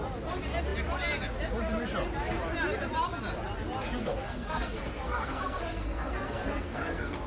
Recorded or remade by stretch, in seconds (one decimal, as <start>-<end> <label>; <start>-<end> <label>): 0.0-4.0 recorded; 4.0-7.3 remade